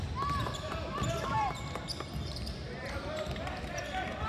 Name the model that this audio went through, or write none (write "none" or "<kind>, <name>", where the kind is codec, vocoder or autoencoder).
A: vocoder, BigVGAN v2